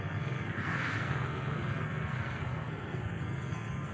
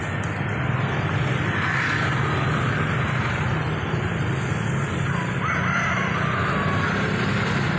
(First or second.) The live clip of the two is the second